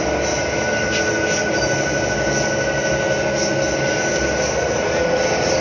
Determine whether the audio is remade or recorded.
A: recorded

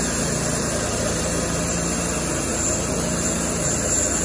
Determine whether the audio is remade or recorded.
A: recorded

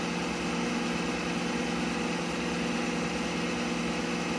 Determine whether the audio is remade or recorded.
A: recorded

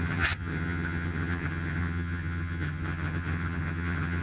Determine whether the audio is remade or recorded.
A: remade